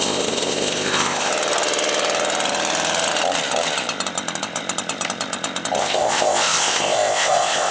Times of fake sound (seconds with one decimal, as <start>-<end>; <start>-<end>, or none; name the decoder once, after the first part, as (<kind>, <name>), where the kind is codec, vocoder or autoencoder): 0.0-1.3 (codec, ZipCodec); 5.8-7.7